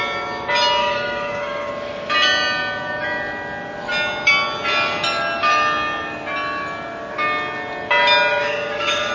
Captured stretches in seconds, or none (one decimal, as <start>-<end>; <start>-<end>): 0.0-0.8; 1.7-8.3